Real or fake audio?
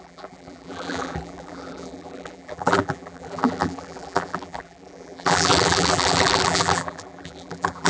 fake